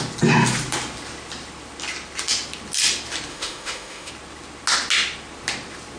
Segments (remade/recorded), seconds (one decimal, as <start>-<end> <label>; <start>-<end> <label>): 0.0-3.3 recorded; 3.3-4.1 remade; 4.1-6.0 recorded